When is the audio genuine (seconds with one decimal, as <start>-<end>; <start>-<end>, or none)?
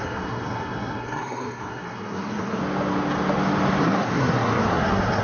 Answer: 2.6-3.8